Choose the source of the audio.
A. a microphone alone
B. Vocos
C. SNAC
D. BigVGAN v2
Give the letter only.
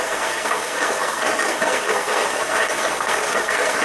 C